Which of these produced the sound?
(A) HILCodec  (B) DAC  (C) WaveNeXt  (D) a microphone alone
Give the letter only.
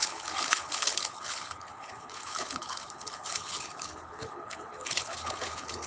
A